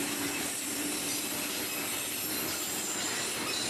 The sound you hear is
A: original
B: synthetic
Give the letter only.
A